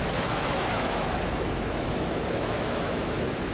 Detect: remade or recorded remade